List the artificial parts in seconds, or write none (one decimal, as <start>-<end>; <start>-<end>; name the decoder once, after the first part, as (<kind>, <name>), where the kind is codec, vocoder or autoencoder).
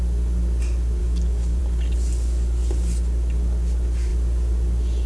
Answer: 1.0-1.6 (codec, DAC)